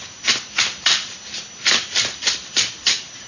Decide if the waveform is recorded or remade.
remade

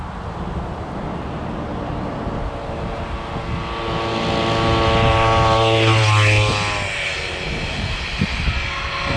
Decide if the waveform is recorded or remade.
recorded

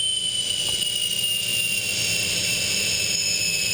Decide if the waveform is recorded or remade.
recorded